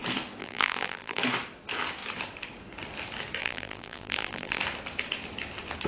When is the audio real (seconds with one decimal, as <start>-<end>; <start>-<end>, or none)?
0.0-0.4; 1.2-3.4; 4.6-5.9